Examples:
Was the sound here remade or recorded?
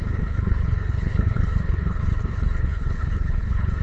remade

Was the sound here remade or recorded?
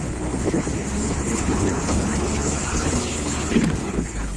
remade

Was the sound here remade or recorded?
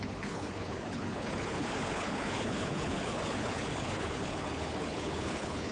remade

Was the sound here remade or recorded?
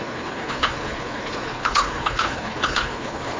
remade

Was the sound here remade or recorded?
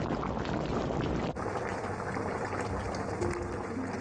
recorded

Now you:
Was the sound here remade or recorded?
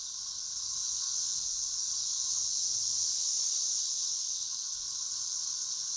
remade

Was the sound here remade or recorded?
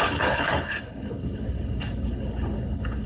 remade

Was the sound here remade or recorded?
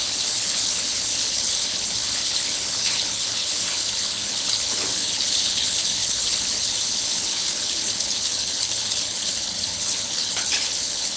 remade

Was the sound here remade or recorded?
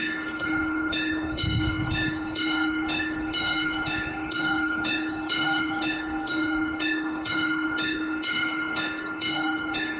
remade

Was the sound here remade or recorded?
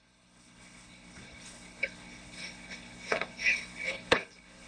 remade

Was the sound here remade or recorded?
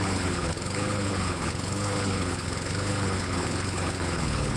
remade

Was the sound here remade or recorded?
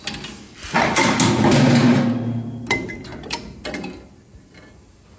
recorded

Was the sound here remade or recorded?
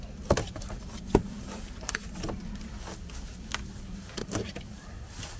recorded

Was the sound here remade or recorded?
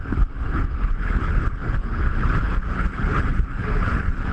remade